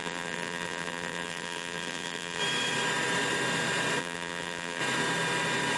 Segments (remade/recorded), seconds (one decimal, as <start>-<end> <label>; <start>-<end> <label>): 0.0-2.4 remade; 2.4-4.0 recorded; 4.0-4.8 remade; 4.8-5.8 recorded